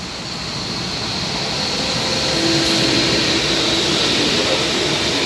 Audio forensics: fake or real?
real